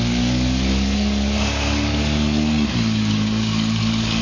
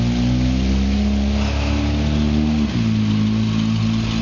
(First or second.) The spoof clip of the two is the first